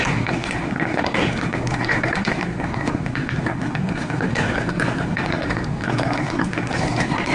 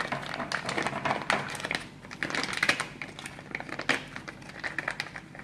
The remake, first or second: first